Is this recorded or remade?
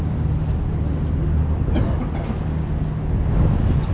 recorded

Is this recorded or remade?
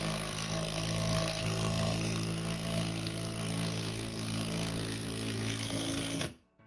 remade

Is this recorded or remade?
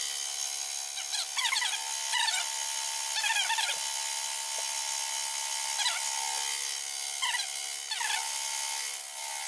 recorded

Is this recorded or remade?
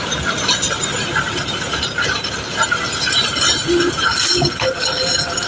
recorded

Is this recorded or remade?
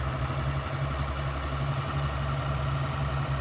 recorded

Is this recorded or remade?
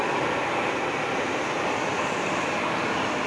recorded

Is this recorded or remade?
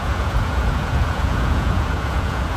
remade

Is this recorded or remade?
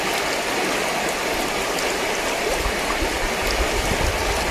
recorded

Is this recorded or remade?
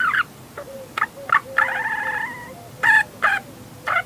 recorded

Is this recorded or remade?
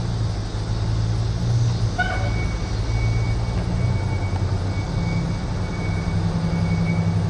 recorded